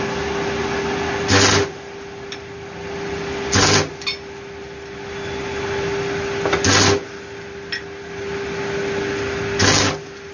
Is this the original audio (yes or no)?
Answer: yes